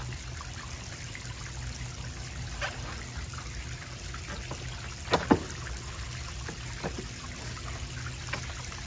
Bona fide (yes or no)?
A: yes